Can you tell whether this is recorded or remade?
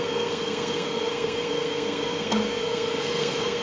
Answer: remade